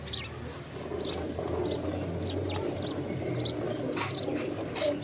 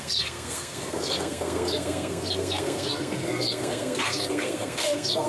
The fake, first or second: second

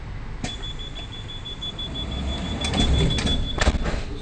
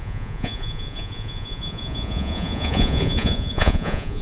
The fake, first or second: second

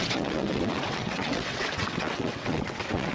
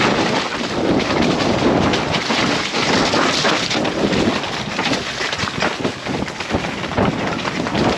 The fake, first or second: first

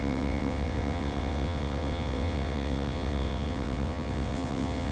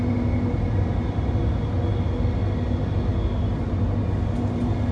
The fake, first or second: first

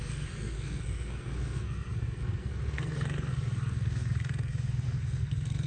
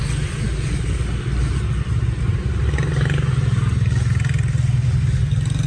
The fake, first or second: first